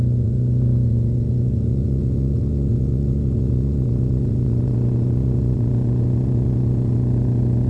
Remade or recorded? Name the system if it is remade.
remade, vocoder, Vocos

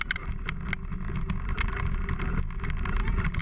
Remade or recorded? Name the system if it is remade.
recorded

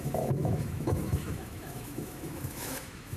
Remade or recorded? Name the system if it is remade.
remade, autoencoder, DAC-VAE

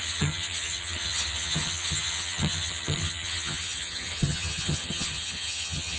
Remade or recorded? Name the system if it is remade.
remade, vocoder, HiFi-GAN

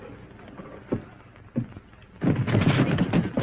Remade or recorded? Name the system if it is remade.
recorded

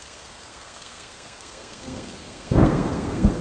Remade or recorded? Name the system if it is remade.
remade, codec, SNAC